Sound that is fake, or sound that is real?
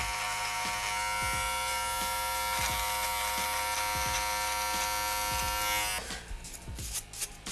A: real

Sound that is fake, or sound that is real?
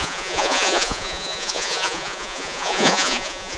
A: fake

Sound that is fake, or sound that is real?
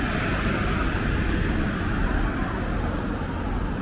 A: real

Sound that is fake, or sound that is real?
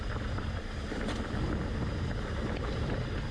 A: real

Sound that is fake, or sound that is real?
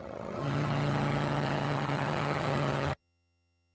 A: fake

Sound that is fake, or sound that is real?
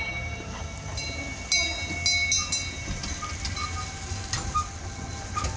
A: real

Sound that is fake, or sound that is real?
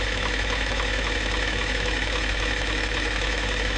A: fake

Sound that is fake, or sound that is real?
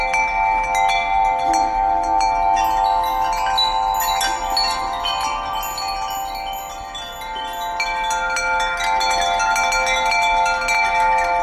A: real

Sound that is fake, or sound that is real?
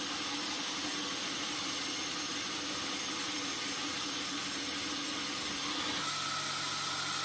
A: real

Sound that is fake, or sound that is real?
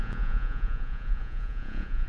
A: fake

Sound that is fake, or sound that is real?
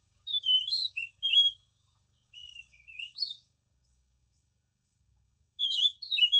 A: fake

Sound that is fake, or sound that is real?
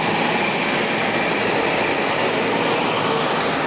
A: real